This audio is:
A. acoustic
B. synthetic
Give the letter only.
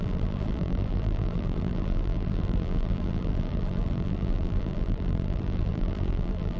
B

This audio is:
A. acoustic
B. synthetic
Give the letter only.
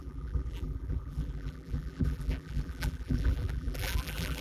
B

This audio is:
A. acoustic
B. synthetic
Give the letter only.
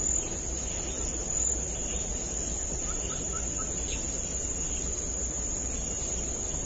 A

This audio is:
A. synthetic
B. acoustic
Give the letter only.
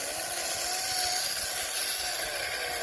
B